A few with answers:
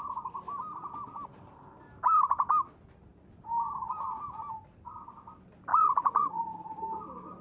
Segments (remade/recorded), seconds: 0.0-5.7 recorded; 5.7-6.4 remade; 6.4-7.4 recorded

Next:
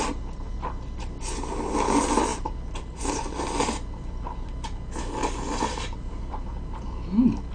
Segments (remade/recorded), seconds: 0.0-7.5 recorded